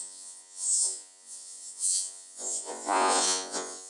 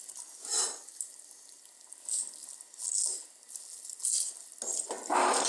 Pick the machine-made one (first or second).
first